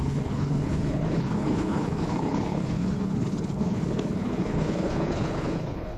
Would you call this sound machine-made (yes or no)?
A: yes